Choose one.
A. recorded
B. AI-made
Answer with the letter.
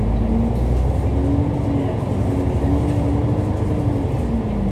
A